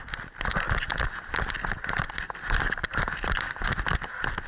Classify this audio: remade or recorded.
remade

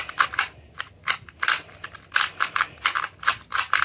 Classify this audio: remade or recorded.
recorded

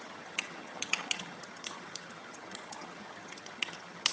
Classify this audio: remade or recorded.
remade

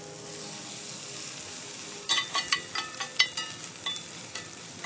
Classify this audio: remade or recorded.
recorded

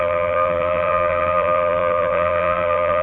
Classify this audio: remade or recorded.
remade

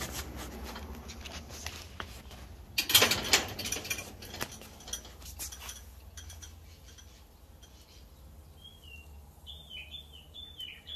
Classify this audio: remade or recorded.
recorded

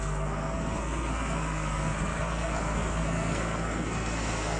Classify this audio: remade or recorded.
remade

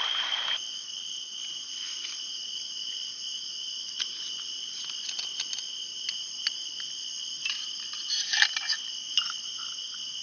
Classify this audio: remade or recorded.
recorded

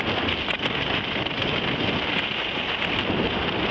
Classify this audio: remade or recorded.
recorded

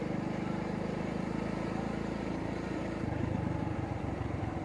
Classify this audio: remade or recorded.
remade